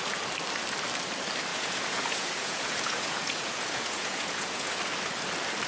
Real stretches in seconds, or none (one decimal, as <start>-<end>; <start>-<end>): 0.0-1.5; 4.8-5.7